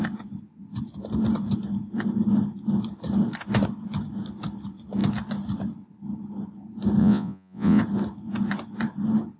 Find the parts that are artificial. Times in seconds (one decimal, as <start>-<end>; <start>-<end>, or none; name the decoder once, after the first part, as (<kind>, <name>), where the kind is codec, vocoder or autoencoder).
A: 7.0-7.8 (vocoder, Vocos)